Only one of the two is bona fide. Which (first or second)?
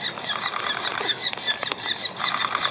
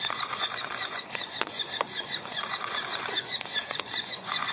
first